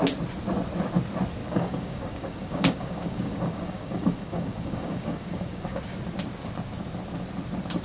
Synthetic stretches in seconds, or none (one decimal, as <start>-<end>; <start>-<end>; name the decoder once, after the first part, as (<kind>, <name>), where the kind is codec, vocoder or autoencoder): 1.4-5.8 (codec, DAC)

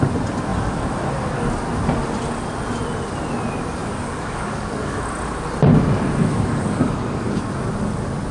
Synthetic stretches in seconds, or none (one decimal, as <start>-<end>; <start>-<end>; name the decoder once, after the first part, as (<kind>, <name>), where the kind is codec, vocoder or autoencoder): 3.8-5.0 (codec, DAC); 6.2-7.5

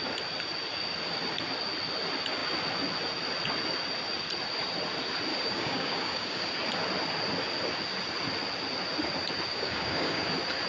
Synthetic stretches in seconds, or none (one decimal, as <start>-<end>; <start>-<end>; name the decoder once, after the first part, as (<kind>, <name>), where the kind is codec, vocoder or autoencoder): 5.3-6.5 (codec, DAC); 9.5-10.2

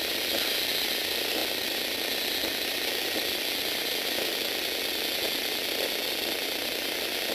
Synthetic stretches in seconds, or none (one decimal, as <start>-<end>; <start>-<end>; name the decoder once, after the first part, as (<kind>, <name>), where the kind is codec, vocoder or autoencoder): none